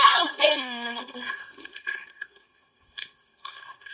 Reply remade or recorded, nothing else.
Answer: remade